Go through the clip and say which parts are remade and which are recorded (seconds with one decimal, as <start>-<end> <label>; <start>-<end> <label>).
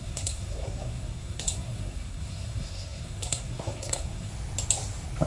0.0-4.3 remade; 4.3-5.3 recorded